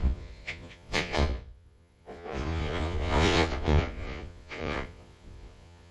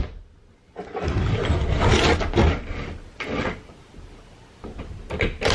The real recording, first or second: second